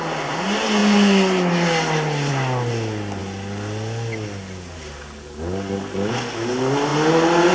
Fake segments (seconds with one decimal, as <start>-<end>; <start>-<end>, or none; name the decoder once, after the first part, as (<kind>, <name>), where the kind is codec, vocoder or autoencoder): none